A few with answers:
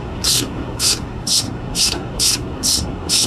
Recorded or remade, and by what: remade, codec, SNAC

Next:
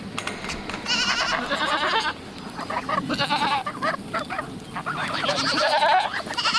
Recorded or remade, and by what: recorded